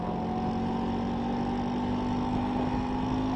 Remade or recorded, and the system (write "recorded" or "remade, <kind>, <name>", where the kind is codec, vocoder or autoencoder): recorded